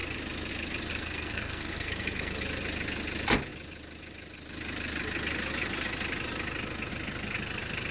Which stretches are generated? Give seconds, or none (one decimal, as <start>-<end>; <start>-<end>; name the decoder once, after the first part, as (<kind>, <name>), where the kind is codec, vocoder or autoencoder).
0.9-2.4 (codec, SNAC)